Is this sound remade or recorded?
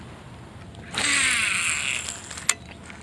recorded